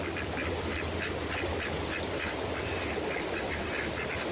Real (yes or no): yes